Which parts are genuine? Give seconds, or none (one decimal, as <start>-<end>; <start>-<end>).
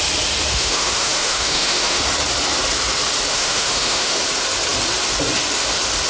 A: 0.0-0.5; 2.0-3.3; 4.2-6.1